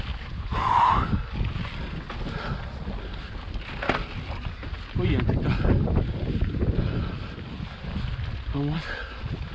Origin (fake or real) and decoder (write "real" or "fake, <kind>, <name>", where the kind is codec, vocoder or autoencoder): real